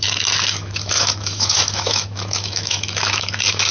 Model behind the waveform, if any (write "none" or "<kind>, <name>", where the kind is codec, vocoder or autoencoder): autoencoder, DAC-VAE